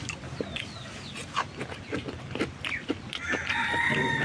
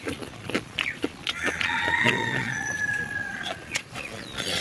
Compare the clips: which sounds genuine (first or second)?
first